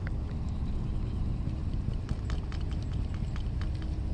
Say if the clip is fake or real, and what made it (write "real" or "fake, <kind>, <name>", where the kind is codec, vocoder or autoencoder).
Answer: real